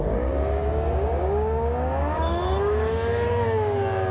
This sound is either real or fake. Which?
fake